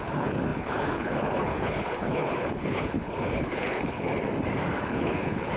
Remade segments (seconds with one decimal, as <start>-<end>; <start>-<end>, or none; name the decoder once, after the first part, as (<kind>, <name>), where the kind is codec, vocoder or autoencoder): 0.0-4.1 (codec, HILCodec); 4.8-5.6

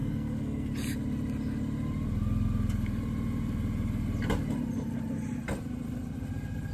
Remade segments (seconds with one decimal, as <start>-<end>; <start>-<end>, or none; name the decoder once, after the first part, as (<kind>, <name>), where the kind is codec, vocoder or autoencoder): 0.0-0.7 (codec, SNAC)

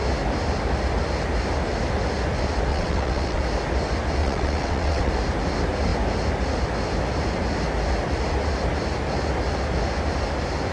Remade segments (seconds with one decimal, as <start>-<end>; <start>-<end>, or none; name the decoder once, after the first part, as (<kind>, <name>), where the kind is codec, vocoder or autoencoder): 2.7-3.4 (vocoder, WaveNeXt); 4.2-5.1

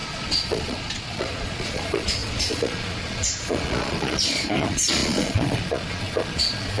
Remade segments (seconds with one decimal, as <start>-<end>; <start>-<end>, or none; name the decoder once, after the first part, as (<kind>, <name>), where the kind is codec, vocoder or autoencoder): 0.0-6.8 (vocoder, Vocos)

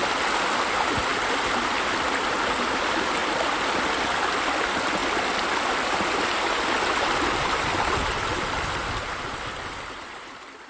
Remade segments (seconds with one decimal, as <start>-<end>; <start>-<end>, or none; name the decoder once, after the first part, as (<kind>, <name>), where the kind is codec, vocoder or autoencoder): none

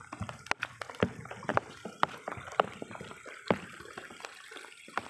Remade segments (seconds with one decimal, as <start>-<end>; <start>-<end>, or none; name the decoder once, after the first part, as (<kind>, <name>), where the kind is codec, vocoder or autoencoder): none

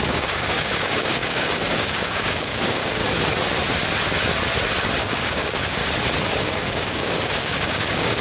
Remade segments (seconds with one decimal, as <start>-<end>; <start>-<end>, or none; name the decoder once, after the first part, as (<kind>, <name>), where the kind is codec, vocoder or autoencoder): 0.0-3.0 (codec, DAC); 5.0-5.8; 6.4-8.2